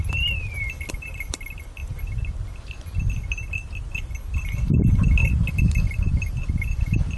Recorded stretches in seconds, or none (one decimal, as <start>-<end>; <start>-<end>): 1.8-3.0